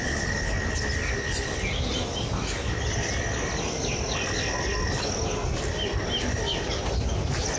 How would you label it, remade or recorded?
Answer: recorded